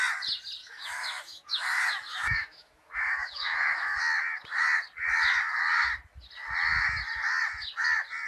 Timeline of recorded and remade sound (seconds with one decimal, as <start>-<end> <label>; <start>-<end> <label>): 0.0-0.6 recorded; 0.6-4.0 remade; 4.0-8.3 recorded